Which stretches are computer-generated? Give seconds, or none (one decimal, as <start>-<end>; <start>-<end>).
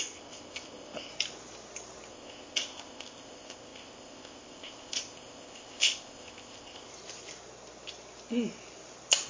0.0-1.1; 2.1-6.9